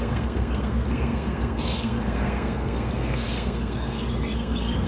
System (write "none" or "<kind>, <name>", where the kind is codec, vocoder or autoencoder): codec, SNAC